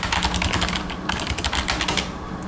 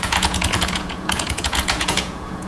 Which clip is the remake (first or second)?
second